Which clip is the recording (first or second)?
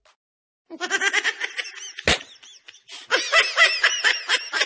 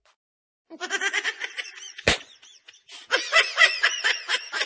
first